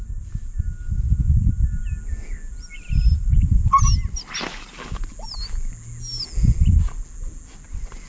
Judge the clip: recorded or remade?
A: recorded